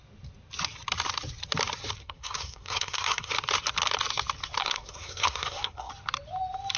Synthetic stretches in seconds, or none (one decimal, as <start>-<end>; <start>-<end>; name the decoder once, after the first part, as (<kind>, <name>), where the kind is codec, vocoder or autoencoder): 2.0-3.3 (codec, SNAC); 4.6-5.9